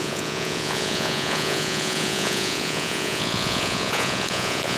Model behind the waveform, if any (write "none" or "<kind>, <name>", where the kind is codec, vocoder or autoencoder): vocoder, Vocos